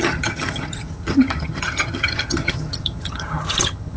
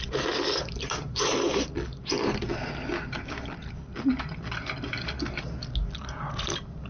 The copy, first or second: first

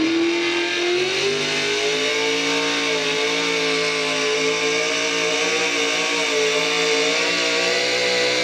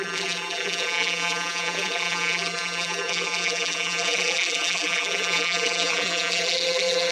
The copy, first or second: second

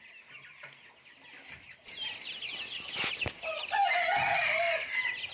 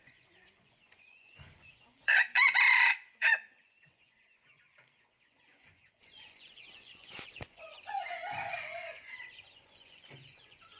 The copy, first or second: second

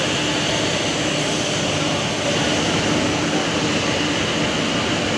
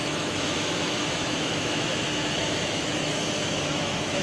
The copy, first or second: second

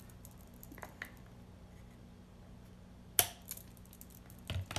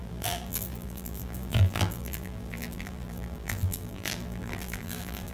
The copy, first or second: second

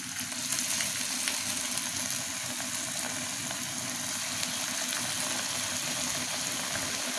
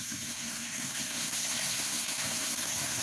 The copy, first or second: second